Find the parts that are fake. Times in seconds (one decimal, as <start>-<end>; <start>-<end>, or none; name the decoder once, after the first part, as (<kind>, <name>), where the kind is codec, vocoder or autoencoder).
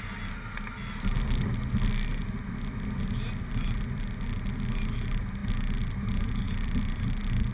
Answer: none